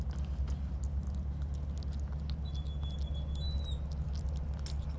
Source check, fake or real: real